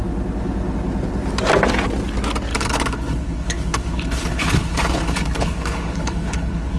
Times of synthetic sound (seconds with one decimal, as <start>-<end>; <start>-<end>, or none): 2.5-6.8

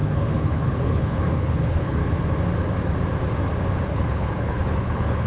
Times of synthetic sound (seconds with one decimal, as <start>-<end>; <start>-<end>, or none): 0.0-2.0; 3.9-5.3

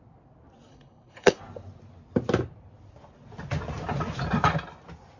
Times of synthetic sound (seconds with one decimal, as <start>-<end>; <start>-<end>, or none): 0.7-1.4

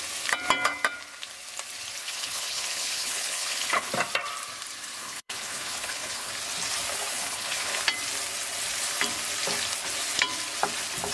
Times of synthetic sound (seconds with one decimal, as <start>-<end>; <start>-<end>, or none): 2.0-3.9; 5.0-6.3; 7.1-7.8

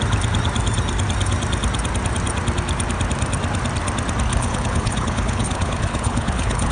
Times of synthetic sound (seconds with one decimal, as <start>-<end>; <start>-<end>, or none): 4.3-6.7

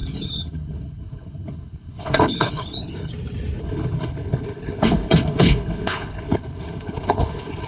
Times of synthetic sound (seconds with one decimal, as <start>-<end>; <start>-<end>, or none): 0.0-3.1; 3.6-7.7